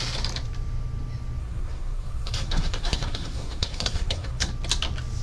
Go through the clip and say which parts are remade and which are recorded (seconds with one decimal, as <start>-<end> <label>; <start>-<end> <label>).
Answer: 0.0-1.4 recorded; 1.4-4.5 remade; 4.5-5.2 recorded